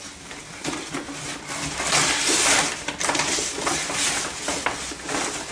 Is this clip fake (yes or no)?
no